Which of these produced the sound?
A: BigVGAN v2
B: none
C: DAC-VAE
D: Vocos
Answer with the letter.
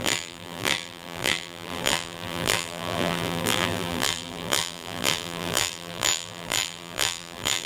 A